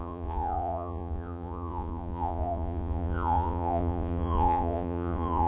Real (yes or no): no